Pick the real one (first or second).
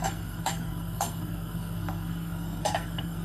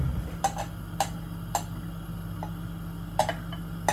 second